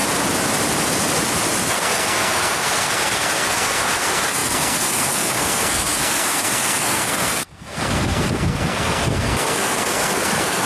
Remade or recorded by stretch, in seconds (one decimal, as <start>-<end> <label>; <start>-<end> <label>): 0.0-1.7 recorded; 1.7-10.7 remade